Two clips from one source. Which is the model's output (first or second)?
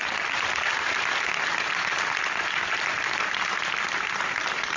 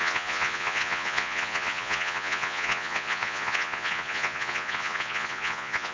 second